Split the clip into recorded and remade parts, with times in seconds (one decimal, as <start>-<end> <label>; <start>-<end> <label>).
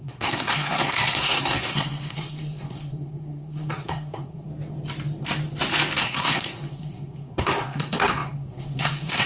0.0-4.5 remade; 4.5-6.0 recorded; 6.0-9.3 remade